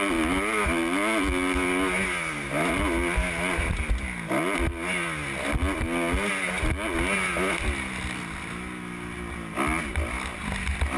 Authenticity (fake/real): real